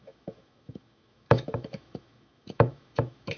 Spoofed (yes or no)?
yes